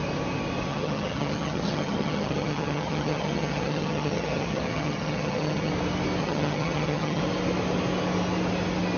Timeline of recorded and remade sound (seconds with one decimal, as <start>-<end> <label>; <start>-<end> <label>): 0.0-0.7 recorded; 0.7-5.7 remade; 5.7-6.2 recorded; 6.2-7.2 remade; 7.2-9.0 recorded